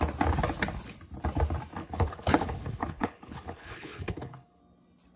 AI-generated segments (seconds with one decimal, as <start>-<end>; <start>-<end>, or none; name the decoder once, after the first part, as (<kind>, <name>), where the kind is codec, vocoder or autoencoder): 1.8-4.6 (codec, HILCodec)